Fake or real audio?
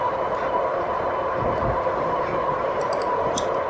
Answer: fake